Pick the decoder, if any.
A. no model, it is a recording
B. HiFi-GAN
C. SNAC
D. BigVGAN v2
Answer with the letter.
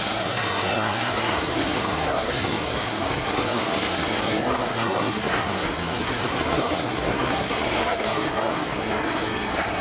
C